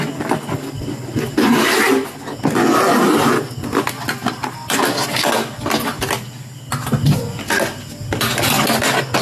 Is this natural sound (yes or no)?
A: yes